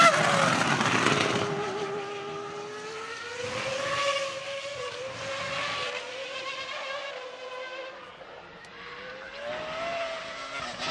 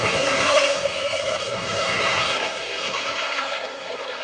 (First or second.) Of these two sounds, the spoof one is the second